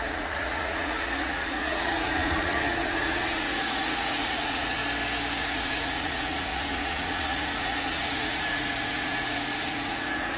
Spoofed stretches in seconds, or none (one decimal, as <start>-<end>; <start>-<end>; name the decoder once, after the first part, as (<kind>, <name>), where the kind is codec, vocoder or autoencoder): 0.0-4.8 (vocoder, Vocos); 5.4-10.4